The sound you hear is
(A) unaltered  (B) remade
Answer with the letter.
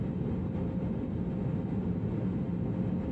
A